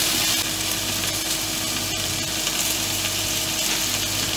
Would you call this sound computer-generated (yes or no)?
no